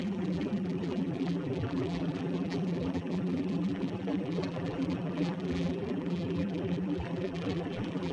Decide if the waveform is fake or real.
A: fake